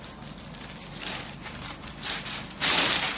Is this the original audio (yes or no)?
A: yes